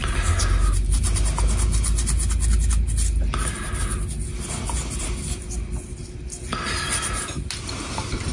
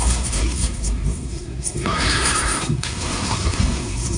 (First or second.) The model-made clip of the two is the second